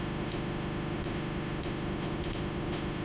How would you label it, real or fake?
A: fake